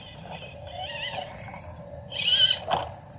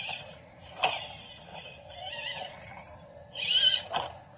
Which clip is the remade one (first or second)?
second